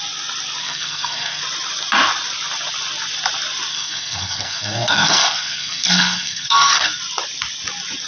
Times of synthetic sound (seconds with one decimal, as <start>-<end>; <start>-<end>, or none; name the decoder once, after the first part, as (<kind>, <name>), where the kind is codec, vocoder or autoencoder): 0.6-1.4 (codec, SNAC); 3.7-7.0